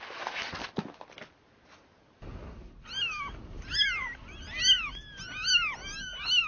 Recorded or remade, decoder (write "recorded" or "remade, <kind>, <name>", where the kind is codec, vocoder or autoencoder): recorded